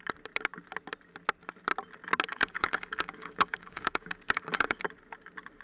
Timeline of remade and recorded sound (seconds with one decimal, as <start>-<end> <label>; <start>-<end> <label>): 0.0-2.3 recorded; 2.3-4.8 remade; 4.8-5.6 recorded